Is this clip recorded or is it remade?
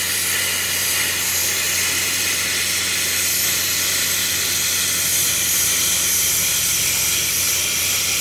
recorded